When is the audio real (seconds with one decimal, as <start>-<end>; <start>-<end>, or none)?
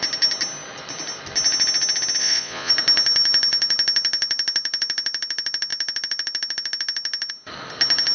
0.0-2.2; 2.7-8.1